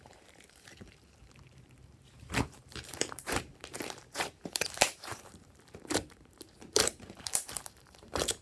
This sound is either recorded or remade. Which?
remade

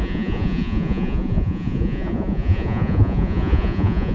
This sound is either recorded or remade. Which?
remade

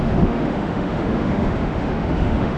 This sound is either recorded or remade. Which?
remade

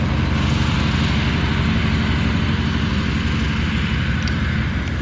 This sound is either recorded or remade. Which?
recorded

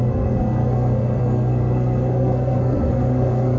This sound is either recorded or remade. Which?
remade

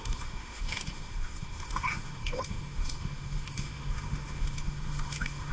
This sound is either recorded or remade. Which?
remade